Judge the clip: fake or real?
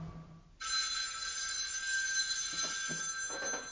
real